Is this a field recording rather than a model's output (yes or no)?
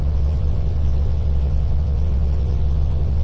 no